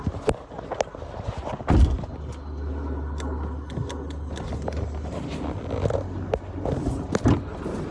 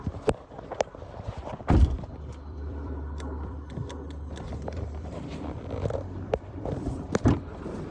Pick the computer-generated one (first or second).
second